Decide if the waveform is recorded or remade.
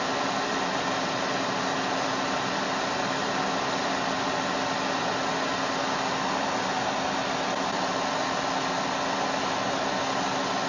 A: recorded